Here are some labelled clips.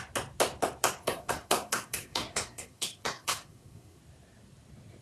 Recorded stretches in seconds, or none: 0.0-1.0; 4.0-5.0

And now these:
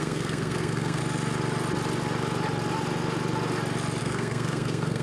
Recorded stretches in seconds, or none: 1.0-4.0

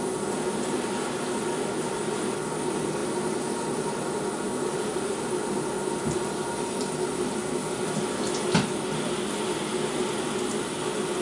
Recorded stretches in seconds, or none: 0.0-11.2

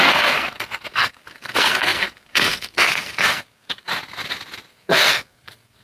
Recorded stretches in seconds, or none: 3.9-4.7

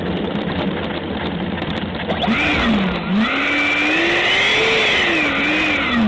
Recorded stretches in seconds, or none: 0.0-6.1

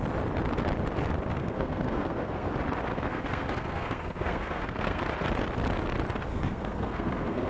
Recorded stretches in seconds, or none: 0.0-1.4; 2.5-2.9; 5.0-6.3

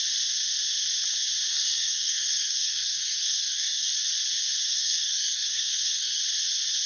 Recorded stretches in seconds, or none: 0.0-1.5; 3.9-4.7; 6.2-6.9

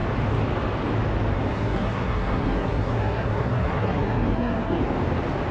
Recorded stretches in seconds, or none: 0.0-1.5; 4.8-5.5